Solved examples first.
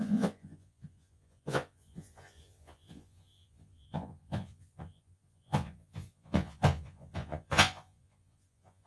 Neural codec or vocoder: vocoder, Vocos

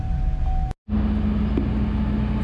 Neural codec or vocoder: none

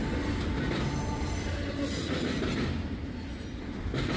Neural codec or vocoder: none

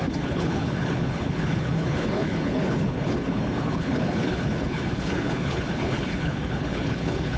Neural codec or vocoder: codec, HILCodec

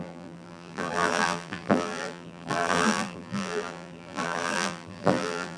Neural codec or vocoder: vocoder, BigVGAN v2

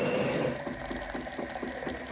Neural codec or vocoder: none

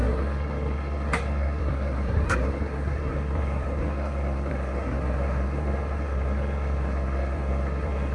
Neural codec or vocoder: codec, SNAC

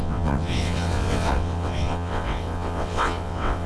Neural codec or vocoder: vocoder, WaveNeXt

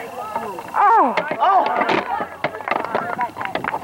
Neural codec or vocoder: none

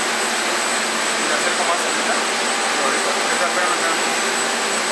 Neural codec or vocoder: none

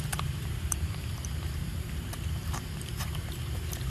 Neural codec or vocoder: vocoder, BigVGAN v2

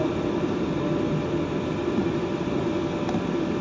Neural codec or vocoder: none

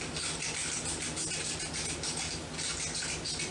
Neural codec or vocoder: none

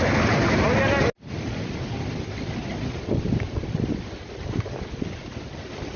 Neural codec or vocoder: none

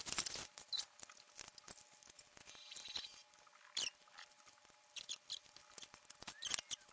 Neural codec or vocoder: none